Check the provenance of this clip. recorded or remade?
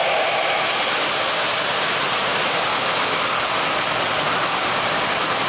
recorded